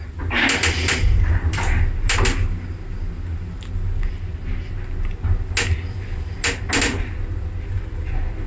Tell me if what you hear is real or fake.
real